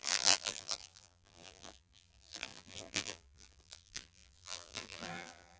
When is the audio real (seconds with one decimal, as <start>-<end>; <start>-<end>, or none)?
none